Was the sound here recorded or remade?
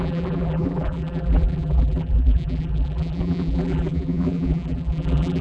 remade